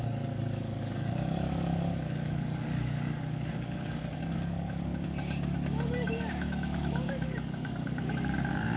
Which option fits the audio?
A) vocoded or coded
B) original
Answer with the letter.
A